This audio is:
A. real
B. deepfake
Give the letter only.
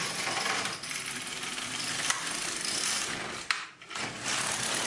A